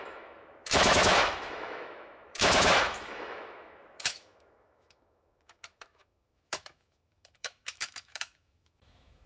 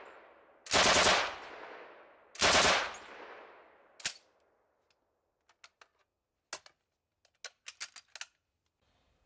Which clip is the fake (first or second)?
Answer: first